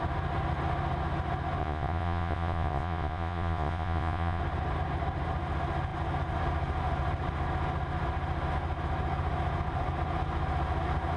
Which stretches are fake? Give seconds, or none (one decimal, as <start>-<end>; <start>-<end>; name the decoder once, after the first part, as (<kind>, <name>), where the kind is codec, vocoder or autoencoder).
1.6-4.4 (vocoder, Vocos)